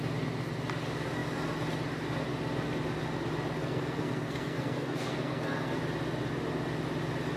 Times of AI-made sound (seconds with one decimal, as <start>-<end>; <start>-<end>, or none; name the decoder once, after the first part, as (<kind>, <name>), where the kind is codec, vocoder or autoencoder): 3.6-5.8 (codec, SNAC)